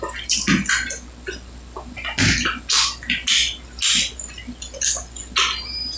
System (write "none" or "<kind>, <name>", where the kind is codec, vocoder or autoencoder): none